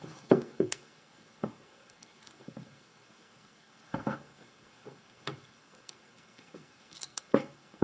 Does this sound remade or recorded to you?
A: remade